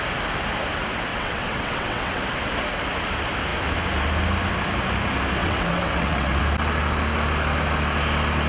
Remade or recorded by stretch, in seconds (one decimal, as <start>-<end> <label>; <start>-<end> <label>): 0.0-1.1 recorded; 1.1-2.2 remade; 2.2-5.4 recorded; 5.4-6.4 remade; 6.4-8.5 recorded